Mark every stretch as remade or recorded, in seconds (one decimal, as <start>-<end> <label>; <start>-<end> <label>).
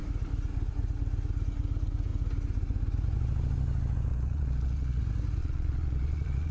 0.0-4.1 recorded; 4.1-5.0 remade; 5.0-5.4 recorded; 5.4-6.5 remade